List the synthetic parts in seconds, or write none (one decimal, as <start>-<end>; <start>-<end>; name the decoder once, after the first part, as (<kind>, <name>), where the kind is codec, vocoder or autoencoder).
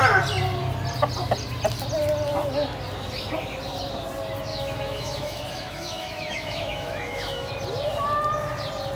4.5-7.5 (autoencoder, DAC-VAE)